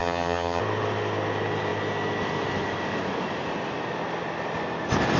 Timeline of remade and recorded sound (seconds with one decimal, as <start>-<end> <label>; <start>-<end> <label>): 0.0-0.6 remade; 0.6-5.2 recorded